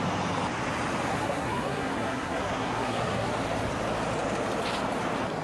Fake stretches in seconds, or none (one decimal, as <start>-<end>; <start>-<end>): 1.1-3.3

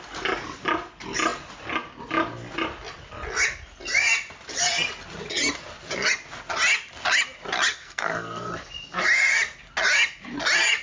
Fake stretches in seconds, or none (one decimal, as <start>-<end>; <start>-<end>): 7.7-8.5

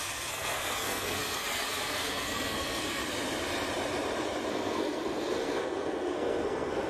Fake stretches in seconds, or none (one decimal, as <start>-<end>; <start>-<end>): 0.0-3.0; 4.5-6.9

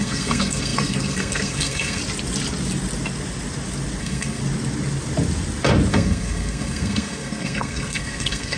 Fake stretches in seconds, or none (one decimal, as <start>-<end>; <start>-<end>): 0.0-2.0; 4.0-4.4; 5.9-8.6

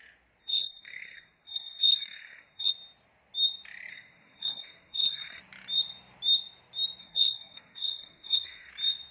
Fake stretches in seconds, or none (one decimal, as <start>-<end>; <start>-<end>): 0.4-2.7; 3.9-5.4; 7.0-8.7

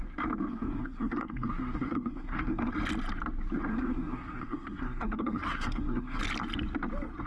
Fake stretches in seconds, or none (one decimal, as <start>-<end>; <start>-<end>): 0.5-2.7; 3.7-6.2

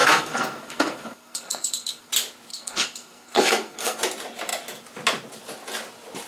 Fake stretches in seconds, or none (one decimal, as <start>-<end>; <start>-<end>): 0.0-2.1; 2.5-4.0

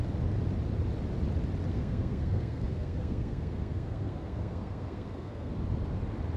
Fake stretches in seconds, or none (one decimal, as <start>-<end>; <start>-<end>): 1.7-5.5